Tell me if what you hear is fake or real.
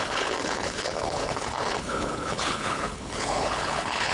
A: fake